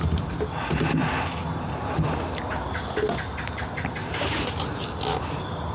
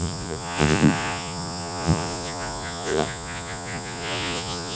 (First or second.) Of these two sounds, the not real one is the second